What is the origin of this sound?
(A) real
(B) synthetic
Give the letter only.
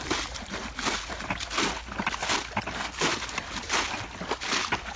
A